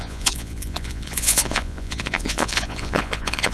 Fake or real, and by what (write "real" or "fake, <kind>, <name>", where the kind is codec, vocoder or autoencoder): fake, vocoder, Vocos